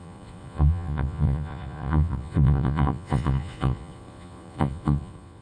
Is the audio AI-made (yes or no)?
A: yes